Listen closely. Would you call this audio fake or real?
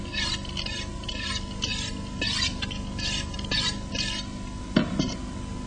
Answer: real